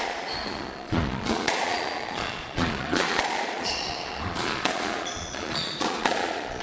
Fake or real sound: fake